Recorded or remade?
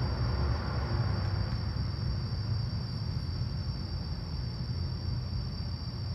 recorded